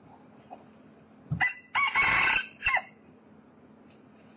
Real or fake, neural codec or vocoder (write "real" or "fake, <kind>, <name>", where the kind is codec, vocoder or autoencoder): real